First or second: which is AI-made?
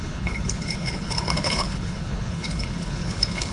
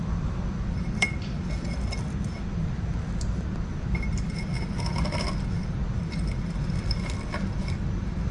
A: first